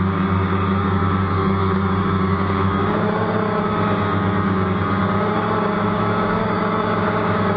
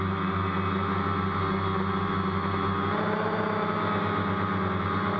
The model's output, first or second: first